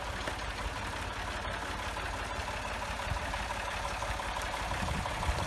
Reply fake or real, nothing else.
real